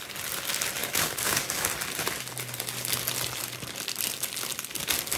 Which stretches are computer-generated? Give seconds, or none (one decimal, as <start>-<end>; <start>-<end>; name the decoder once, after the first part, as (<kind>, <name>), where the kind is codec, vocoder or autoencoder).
0.8-1.7 (codec, DAC)